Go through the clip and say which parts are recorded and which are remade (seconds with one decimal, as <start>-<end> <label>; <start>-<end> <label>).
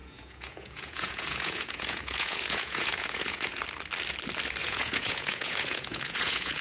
0.0-3.6 remade; 3.6-4.6 recorded; 4.6-6.6 remade